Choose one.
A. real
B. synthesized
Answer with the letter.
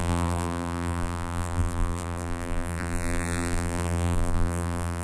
B